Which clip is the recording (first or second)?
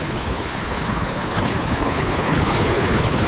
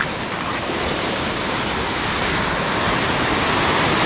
second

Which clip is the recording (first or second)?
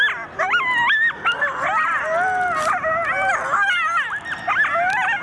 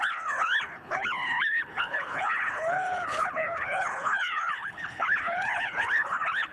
first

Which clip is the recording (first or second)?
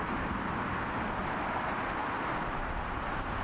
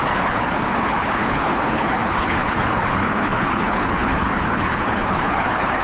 first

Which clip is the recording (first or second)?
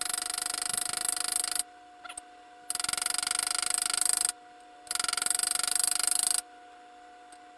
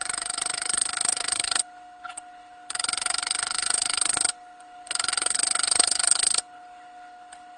first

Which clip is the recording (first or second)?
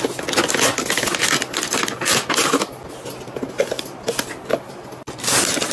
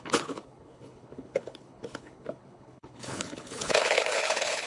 first